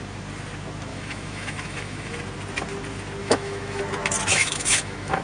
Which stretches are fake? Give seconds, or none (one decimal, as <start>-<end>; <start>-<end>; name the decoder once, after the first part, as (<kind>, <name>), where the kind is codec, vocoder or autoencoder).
0.9-2.1 (autoencoder, DAC-VAE); 3.2-3.8; 4.3-5.2